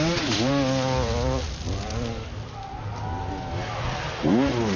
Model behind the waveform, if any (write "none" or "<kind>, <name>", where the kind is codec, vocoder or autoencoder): none